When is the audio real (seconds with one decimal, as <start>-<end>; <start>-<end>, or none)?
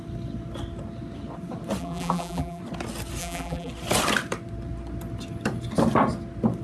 0.0-1.8; 2.6-3.2; 3.7-6.6